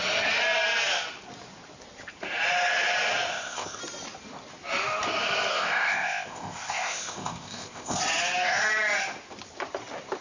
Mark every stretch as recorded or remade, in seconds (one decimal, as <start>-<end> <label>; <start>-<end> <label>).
0.0-3.3 recorded; 3.3-3.8 remade; 3.8-5.5 recorded; 5.5-8.0 remade; 8.0-10.2 recorded